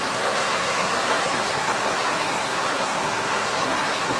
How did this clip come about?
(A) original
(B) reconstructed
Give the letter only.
B